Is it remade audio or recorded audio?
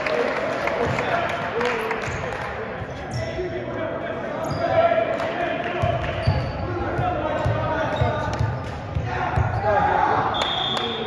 recorded